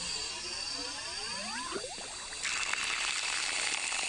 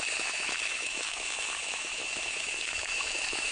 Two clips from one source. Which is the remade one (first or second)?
second